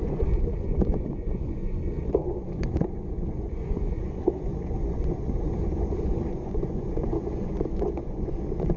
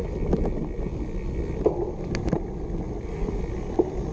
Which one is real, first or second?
second